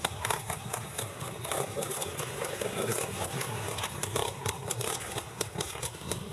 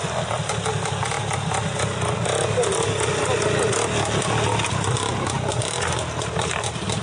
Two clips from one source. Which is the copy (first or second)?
first